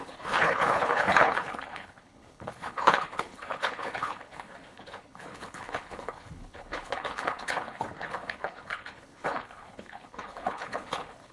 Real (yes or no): no